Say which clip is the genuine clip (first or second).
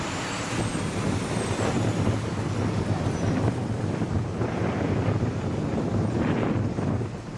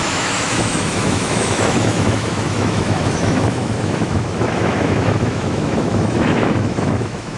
first